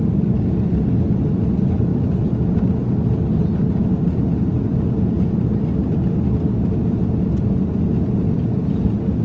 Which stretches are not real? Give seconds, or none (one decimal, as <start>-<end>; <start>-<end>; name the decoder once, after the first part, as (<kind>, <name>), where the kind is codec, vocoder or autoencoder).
none